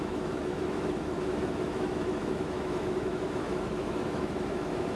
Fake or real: fake